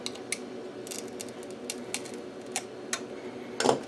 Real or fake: real